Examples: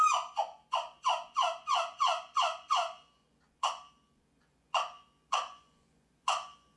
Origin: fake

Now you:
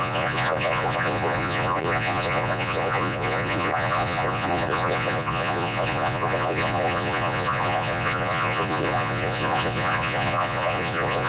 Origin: fake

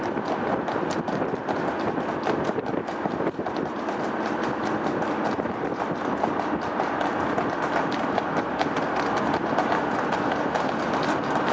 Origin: real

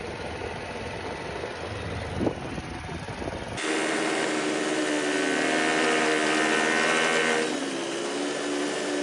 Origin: real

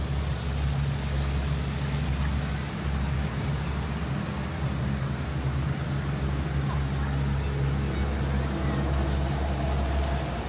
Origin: real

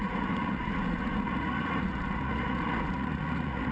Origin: fake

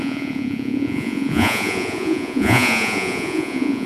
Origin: fake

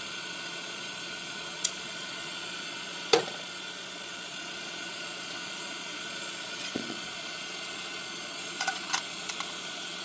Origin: fake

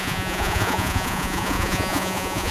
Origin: fake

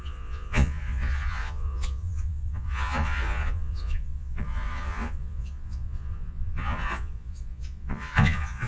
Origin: fake